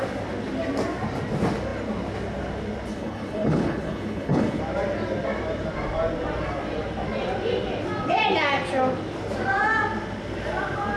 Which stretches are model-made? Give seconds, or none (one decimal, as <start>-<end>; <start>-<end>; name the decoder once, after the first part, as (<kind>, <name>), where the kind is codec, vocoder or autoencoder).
2.9-4.6 (codec, HILCodec)